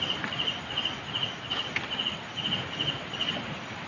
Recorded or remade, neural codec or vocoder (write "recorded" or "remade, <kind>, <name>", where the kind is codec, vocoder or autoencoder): recorded